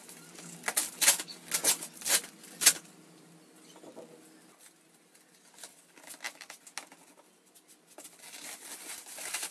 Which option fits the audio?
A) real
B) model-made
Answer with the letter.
A